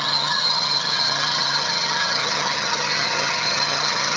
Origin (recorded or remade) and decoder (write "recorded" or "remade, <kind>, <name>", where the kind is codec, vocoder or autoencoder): remade, vocoder, HiFi-GAN